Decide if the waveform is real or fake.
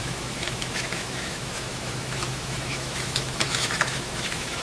fake